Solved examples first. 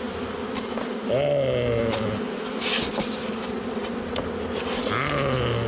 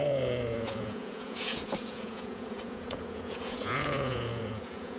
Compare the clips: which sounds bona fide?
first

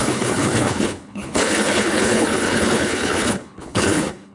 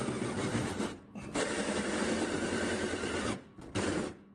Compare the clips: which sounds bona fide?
second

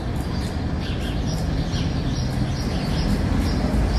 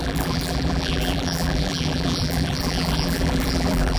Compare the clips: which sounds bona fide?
first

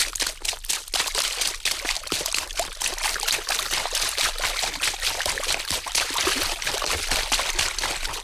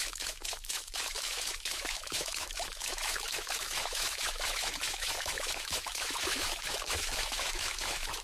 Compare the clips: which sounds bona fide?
first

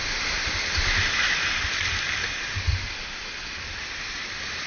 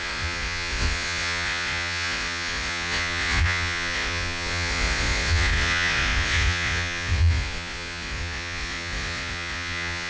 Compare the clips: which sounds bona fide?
first